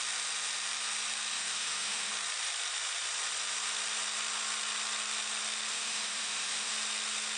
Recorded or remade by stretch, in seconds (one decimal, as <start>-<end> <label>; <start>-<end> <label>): 0.0-1.3 recorded; 1.3-2.1 remade; 2.1-5.7 recorded; 5.7-6.7 remade; 6.7-7.4 recorded